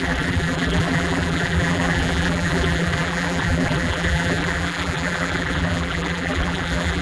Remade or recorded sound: remade